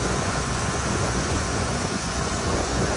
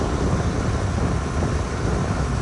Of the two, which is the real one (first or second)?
second